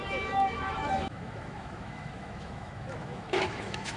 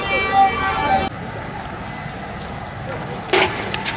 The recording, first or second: second